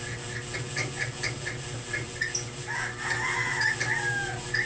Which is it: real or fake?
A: real